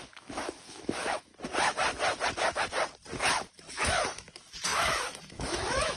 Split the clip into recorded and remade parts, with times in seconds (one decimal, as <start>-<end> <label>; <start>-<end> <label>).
0.0-1.3 remade; 1.3-3.5 recorded; 3.5-6.0 remade